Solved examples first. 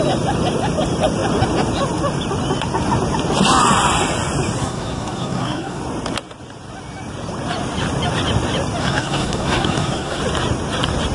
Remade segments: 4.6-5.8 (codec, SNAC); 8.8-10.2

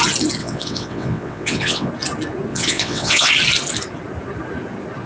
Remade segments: 0.4-1.9 (vocoder, WaveNeXt); 2.5-3.3

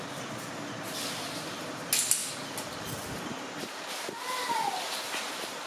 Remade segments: none

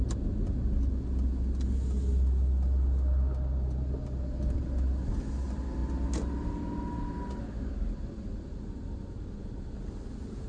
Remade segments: none

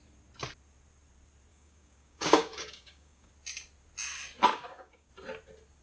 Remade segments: 1.5-3.3 (codec, DAC); 4.5-5.1